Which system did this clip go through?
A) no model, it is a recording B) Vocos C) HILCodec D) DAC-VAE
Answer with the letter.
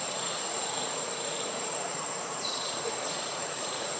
B